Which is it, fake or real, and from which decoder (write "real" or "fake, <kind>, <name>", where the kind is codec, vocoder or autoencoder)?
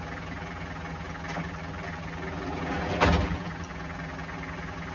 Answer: real